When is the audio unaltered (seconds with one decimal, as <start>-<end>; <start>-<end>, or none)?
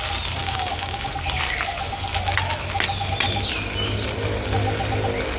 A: 0.0-0.4; 1.1-5.4